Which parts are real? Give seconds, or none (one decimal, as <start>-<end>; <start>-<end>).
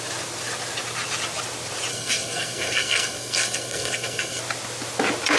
0.0-1.9; 4.4-5.4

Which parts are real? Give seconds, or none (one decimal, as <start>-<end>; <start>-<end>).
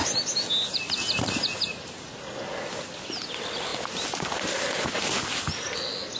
0.0-6.2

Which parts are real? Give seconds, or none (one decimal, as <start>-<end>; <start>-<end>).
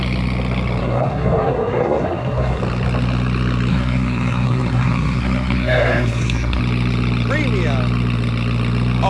0.0-0.8; 2.6-3.7; 6.6-9.1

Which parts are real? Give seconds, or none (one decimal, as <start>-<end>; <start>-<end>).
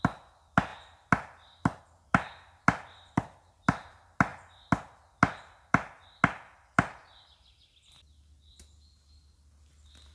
0.0-10.1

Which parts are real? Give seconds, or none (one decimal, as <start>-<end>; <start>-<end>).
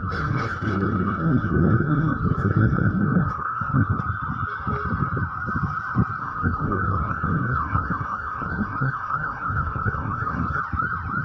4.0-6.2; 10.6-11.2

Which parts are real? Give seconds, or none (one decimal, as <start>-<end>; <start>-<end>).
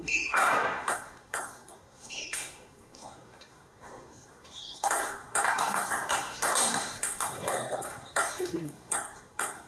none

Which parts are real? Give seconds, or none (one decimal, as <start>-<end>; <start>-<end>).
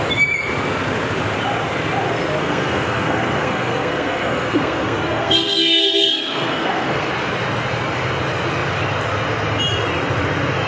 0.0-2.4; 7.1-10.7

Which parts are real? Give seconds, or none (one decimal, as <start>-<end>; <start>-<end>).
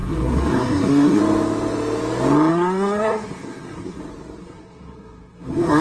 1.2-2.5; 4.0-4.4